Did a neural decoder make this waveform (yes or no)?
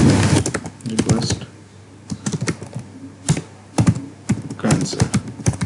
no